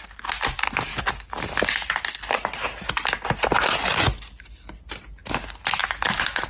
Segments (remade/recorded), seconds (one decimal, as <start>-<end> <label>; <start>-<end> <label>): 0.0-6.5 recorded